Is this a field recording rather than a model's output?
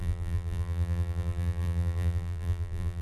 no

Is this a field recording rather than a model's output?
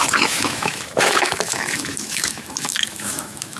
no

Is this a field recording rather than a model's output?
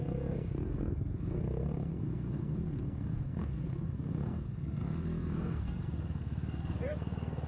no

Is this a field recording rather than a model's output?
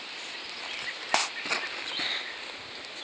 yes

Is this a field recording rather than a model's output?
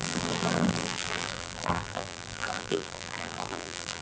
no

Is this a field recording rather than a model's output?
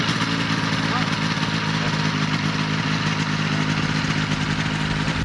yes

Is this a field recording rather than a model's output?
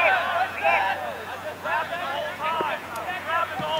no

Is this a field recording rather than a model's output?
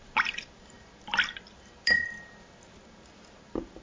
yes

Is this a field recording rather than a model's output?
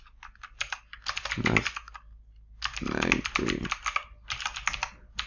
yes